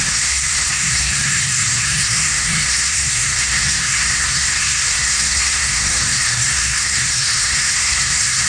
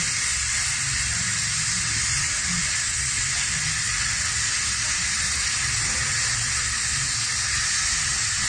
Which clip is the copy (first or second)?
first